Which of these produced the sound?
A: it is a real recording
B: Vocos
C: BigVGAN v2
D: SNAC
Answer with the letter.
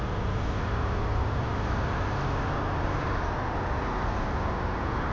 A